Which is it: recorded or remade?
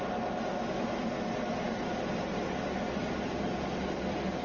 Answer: recorded